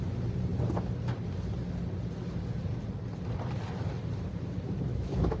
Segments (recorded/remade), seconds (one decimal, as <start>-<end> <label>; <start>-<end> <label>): 0.0-4.9 recorded; 4.9-5.4 remade